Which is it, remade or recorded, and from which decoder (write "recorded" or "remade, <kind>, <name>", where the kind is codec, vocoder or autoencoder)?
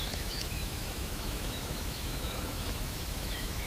remade, autoencoder, DAC-VAE